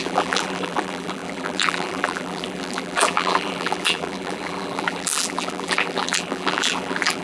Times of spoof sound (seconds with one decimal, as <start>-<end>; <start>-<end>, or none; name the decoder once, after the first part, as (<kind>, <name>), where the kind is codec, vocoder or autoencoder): 0.0-7.2 (vocoder, BigVGAN v2)